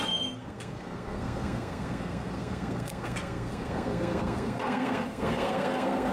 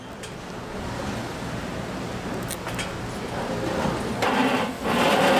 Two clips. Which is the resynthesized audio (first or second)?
first